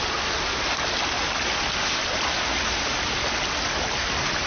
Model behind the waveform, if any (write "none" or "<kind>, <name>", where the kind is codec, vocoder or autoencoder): none